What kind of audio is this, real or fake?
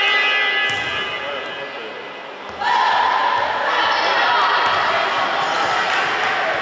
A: real